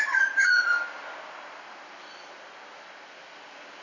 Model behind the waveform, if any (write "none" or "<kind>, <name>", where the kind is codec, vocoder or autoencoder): none